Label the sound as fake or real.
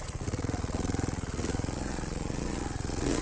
fake